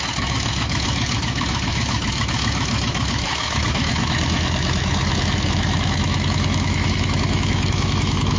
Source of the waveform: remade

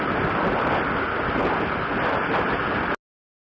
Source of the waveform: recorded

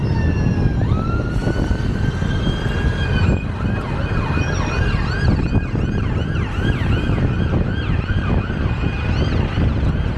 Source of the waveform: recorded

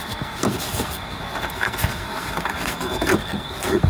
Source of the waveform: remade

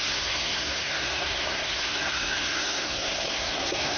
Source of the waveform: remade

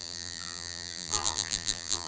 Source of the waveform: remade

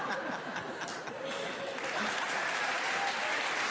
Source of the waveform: recorded